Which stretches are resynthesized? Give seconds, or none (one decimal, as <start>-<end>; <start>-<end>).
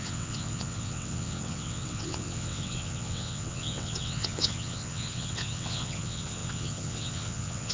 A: 0.0-7.7